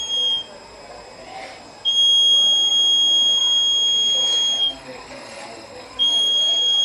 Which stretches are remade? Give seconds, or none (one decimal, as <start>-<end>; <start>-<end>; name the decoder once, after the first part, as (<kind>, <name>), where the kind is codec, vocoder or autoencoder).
4.6-6.8 (codec, DAC)